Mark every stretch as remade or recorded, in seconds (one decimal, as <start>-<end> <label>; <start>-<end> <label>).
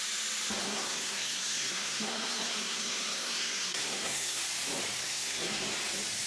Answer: 0.0-0.6 recorded; 0.6-4.4 remade; 4.4-5.0 recorded; 5.0-5.6 remade; 5.6-6.3 recorded